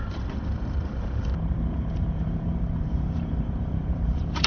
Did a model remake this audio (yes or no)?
yes